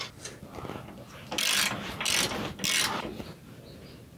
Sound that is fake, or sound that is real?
real